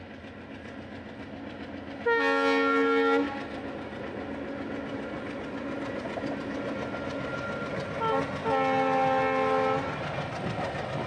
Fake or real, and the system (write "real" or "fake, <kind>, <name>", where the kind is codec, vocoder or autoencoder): real